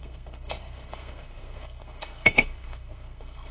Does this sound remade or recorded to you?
remade